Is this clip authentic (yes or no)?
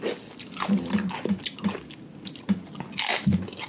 yes